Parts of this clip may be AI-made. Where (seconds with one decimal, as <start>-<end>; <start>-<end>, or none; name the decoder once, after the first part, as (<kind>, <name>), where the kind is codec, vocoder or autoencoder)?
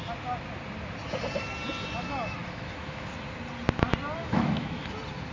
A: 2.4-3.1 (autoencoder, DAC-VAE); 4.2-4.8